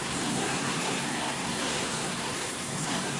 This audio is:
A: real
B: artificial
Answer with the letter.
B